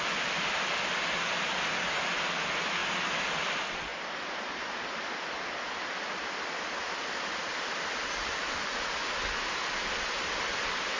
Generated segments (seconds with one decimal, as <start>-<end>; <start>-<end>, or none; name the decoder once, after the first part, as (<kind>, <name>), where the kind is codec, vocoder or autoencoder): none